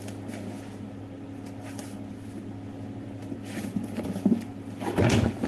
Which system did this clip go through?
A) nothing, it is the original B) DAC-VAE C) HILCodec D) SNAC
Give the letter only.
A